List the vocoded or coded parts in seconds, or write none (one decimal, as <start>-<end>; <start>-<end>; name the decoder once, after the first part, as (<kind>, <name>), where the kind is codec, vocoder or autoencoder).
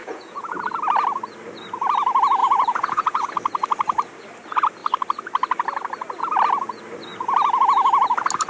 0.0-0.6 (vocoder, Vocos); 2.4-3.3